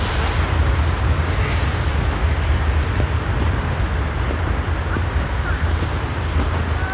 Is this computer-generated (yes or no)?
no